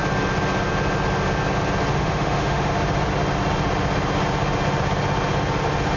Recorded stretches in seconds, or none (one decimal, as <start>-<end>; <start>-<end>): 0.0-1.9; 2.7-6.0